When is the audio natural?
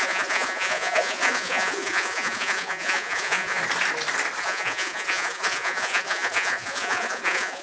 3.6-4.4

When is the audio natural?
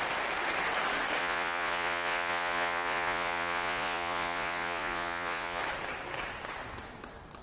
0.0-1.2; 5.6-7.4